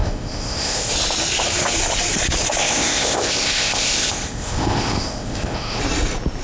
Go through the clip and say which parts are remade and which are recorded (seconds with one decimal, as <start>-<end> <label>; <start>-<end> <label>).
0.0-0.9 remade; 0.9-2.6 recorded; 2.6-5.8 remade; 5.8-6.4 recorded